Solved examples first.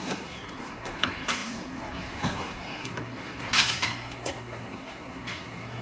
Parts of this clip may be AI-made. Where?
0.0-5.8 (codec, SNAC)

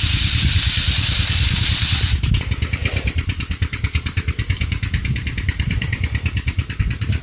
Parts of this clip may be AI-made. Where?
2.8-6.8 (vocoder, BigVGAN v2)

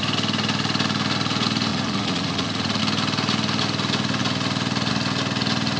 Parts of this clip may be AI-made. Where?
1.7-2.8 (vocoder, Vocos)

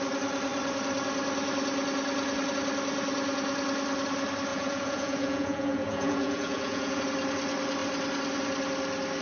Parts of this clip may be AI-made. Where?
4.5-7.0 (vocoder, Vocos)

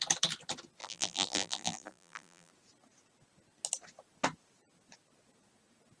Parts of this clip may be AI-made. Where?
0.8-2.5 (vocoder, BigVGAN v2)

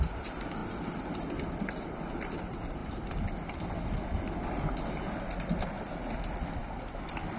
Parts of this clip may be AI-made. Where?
none